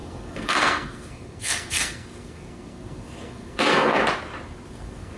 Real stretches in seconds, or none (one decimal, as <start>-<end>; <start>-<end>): 4.0-4.7